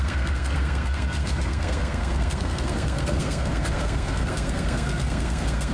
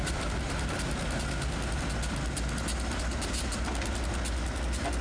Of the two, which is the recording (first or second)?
second